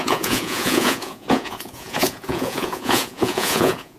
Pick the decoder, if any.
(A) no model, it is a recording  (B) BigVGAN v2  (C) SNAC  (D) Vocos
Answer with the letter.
D